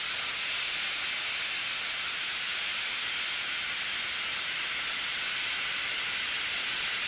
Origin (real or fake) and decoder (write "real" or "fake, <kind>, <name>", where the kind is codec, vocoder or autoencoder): real